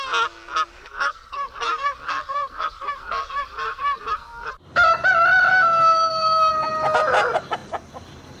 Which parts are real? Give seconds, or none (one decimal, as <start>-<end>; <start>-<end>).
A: 0.0-0.7; 4.5-5.5; 6.5-8.4